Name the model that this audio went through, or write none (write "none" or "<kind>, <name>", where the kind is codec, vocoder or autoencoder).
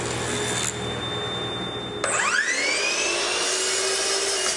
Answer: none